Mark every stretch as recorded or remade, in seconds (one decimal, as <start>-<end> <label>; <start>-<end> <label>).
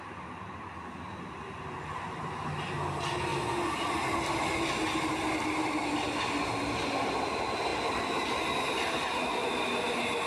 0.0-10.3 recorded